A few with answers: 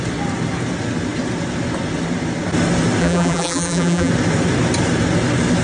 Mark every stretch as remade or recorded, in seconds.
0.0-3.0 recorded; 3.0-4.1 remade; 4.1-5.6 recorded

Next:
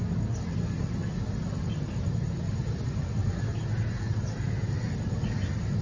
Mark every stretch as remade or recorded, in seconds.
0.0-3.2 recorded; 3.2-4.7 remade; 4.7-5.8 recorded

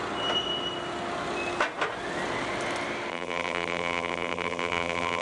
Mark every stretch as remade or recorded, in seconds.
0.0-3.1 recorded; 3.1-5.2 remade

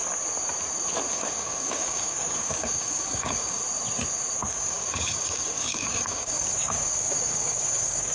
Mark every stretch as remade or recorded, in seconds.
0.0-1.1 recorded; 1.1-3.6 remade; 3.6-4.5 recorded; 4.5-8.1 remade